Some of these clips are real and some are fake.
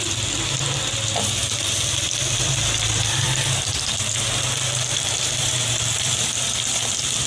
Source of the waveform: fake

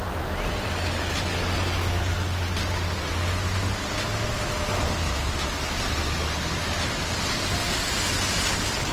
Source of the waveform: real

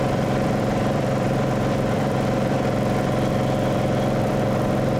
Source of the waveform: fake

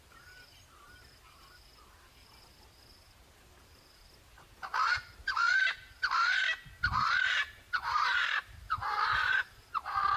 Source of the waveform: real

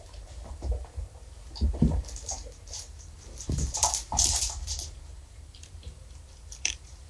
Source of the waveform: fake